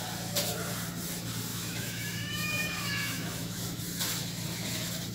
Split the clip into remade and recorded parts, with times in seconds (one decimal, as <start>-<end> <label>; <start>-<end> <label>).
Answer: 0.0-1.5 recorded; 1.5-3.8 remade; 3.8-5.1 recorded